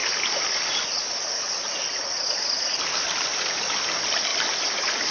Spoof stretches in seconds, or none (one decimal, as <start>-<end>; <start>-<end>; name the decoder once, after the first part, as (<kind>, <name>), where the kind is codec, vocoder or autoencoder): none